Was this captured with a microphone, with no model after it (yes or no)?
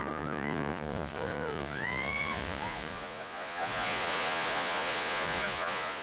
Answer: no